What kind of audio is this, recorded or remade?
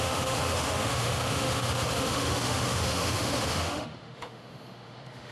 remade